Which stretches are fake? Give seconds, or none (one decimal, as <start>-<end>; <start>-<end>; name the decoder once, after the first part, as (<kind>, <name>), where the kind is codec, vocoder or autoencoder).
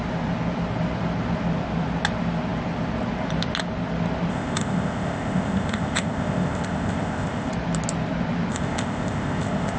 4.3-7.5 (codec, ZipCodec); 8.5-9.8